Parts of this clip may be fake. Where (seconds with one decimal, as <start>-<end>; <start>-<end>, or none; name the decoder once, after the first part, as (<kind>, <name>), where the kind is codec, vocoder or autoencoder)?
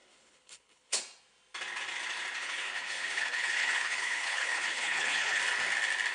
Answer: 0.0-1.0 (codec, HILCodec); 2.4-5.4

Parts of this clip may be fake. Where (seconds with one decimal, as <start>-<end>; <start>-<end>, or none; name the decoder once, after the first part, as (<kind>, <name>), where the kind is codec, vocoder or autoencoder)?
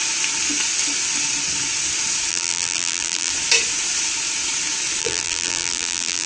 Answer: 2.3-3.3 (vocoder, BigVGAN v2); 5.0-6.3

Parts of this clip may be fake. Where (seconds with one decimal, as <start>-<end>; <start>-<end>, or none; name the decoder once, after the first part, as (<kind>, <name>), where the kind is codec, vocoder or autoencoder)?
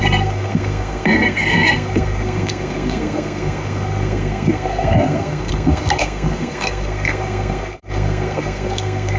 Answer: 0.0-9.2 (codec, SNAC)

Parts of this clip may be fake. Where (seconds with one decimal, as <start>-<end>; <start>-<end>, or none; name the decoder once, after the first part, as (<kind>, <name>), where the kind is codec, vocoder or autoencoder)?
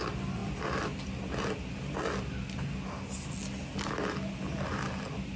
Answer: none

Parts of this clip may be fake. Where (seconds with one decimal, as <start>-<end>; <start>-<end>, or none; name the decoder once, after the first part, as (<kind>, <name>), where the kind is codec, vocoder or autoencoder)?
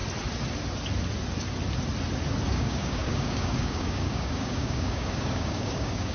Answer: 2.5-6.1 (codec, DAC)